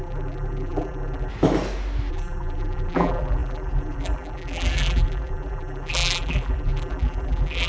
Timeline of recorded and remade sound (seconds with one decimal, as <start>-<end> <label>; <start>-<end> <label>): 0.0-1.3 remade; 1.3-2.1 recorded; 2.1-7.7 remade